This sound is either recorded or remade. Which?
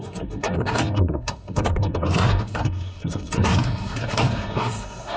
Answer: remade